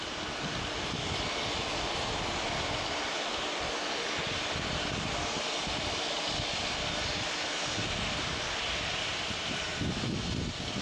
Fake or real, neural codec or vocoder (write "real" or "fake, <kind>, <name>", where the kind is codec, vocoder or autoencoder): real